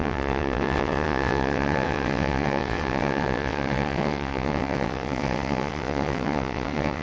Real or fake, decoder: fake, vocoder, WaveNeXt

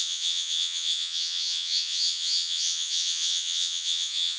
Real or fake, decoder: fake, vocoder, Vocos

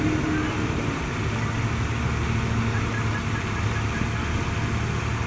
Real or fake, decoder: real